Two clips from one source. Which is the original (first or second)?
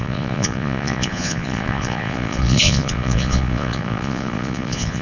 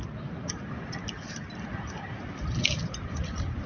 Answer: second